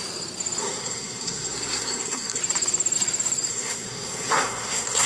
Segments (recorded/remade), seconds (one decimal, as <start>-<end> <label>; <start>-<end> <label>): 0.0-0.6 recorded; 0.6-2.4 remade; 2.4-3.5 recorded; 3.5-5.1 remade

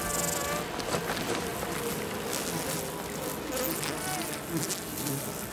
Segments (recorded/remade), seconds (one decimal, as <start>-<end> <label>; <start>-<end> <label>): 0.0-5.5 recorded

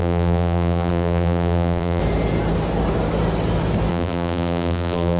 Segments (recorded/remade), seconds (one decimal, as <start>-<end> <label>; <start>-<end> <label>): 0.0-2.0 remade; 2.0-3.9 recorded; 3.9-5.2 remade

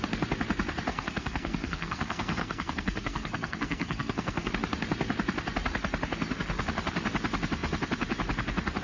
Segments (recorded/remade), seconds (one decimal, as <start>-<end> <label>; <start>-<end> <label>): 0.0-0.9 recorded; 0.9-4.5 remade; 4.5-8.8 recorded

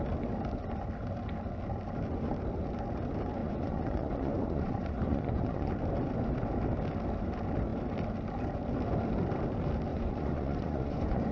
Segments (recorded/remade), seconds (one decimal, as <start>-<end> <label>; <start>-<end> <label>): 0.0-3.4 recorded; 3.4-5.7 remade; 5.7-9.9 recorded; 9.9-11.3 remade

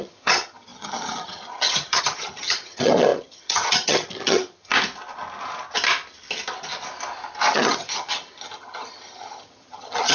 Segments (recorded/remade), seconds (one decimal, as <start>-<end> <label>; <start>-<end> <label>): 0.0-4.7 remade; 4.7-7.5 recorded; 7.5-10.1 remade